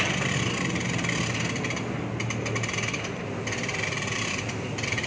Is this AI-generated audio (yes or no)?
no